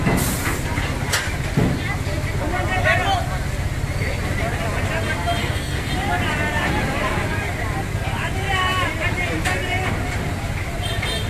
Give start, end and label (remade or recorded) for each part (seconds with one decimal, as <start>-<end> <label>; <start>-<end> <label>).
0.0-5.4 recorded; 5.4-5.9 remade; 5.9-11.3 recorded